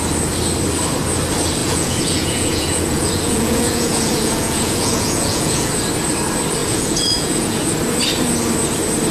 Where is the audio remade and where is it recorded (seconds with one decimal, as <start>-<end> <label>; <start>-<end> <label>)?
0.0-1.6 recorded; 1.6-5.7 remade; 5.7-6.6 recorded; 6.6-7.6 remade; 7.6-9.1 recorded